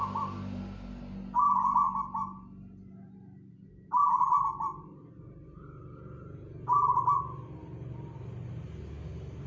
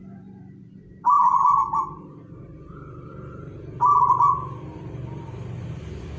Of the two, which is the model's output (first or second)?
second